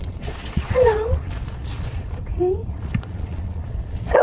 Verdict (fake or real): fake